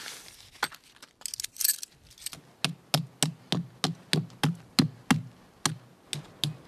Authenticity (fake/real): real